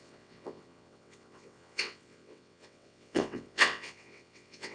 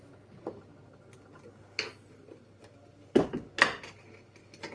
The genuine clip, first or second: second